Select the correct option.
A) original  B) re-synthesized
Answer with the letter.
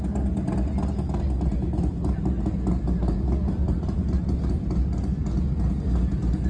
A